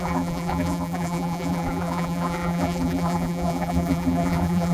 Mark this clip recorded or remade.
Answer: remade